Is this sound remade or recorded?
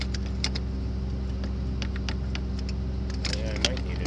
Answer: recorded